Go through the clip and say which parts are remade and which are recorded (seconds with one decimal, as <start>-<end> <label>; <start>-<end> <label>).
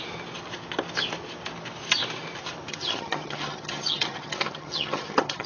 0.0-2.7 recorded; 2.7-5.5 remade